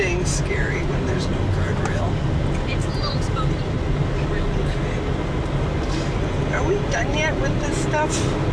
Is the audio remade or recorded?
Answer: recorded